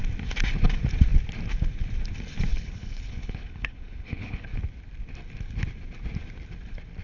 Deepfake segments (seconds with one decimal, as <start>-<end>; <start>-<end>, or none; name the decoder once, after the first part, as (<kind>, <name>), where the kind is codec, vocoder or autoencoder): 2.5-4.6 (codec, HILCodec)